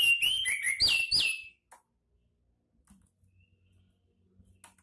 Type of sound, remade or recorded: recorded